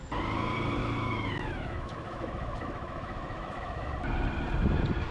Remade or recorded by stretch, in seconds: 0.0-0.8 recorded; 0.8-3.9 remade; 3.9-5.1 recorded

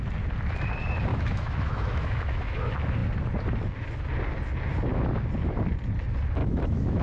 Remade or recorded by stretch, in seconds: 0.0-1.1 recorded; 1.1-2.6 remade; 2.6-6.4 recorded; 6.4-7.0 remade

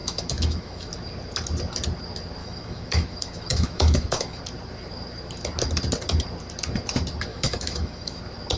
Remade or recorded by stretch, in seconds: 0.0-0.9 remade; 0.9-2.4 recorded; 2.4-4.4 remade; 4.4-7.3 recorded; 7.3-8.2 remade; 8.2-8.6 recorded

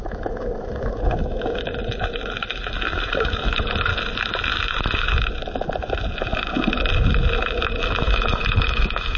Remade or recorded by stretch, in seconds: 0.0-3.9 remade; 3.9-8.0 recorded; 8.0-9.2 remade

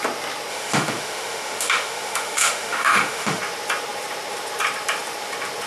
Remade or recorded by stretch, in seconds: 0.0-0.5 recorded; 0.5-3.4 remade; 3.4-5.7 recorded

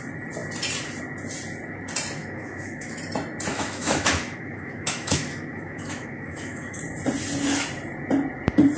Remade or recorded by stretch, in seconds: 0.0-2.2 recorded; 2.2-3.0 remade; 3.0-3.5 recorded; 3.5-6.8 remade; 6.8-8.8 recorded